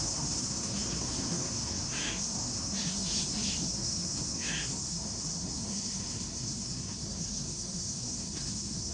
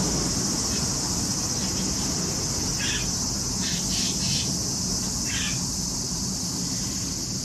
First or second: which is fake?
first